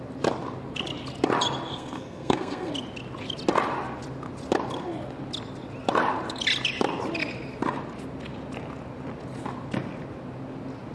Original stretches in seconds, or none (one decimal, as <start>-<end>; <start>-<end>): 0.0-1.7; 2.7-10.9